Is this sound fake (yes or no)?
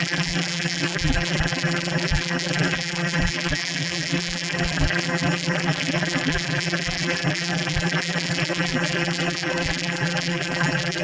yes